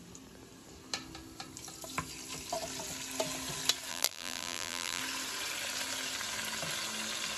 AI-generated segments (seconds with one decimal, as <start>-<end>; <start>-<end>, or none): 3.9-5.0